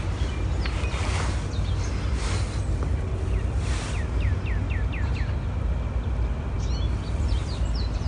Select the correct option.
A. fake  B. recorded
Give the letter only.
B